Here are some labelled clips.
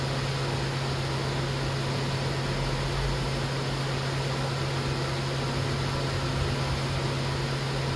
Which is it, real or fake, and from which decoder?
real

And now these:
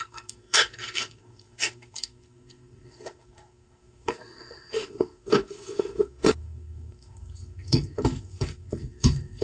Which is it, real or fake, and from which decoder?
fake, codec, SNAC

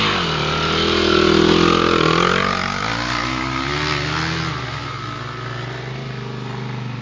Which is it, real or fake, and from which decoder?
real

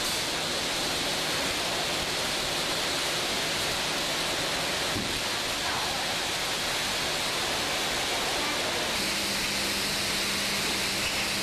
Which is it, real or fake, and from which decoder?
real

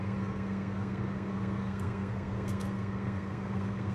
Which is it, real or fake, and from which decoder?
fake, codec, SNAC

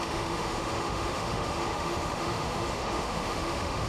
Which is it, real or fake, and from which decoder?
fake, autoencoder, DAC-VAE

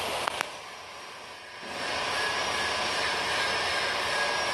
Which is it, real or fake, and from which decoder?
real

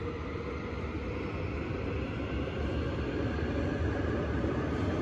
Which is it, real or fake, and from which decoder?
real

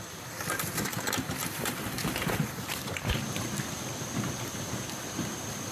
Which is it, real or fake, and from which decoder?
fake, vocoder, BigVGAN v2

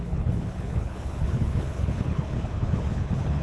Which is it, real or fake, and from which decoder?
fake, codec, HILCodec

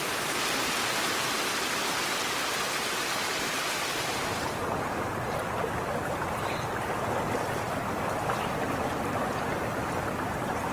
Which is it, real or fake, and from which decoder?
real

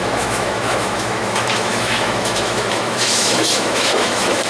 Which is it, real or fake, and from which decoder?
fake, autoencoder, DAC-VAE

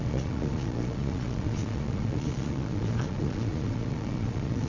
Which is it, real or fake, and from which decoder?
fake, vocoder, Vocos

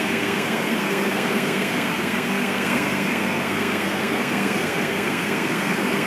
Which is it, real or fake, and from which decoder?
fake, codec, SNAC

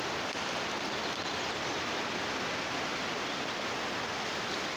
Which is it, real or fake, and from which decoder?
fake, vocoder, BigVGAN v2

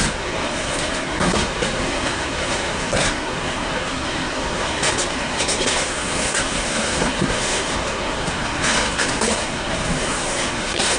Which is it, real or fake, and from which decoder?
fake, codec, SNAC